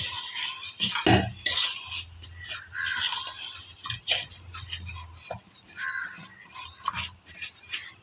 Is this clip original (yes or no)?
yes